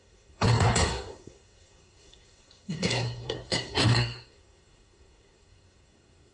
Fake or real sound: fake